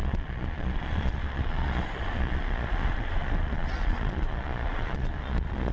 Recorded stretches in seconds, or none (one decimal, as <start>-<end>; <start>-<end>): none